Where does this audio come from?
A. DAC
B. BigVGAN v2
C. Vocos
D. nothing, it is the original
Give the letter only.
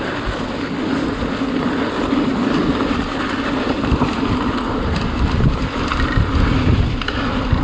B